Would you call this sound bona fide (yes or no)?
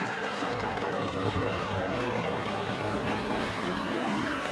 no